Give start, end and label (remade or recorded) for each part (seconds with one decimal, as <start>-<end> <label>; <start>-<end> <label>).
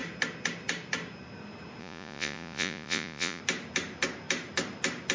0.0-1.8 recorded; 1.8-3.4 remade; 3.4-5.1 recorded